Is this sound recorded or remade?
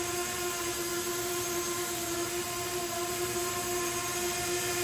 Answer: recorded